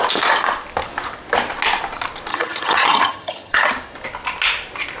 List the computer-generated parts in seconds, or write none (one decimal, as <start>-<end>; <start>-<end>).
2.3-3.7